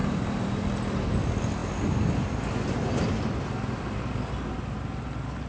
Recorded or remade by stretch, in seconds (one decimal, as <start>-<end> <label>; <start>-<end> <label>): 0.0-1.0 remade; 1.0-5.5 recorded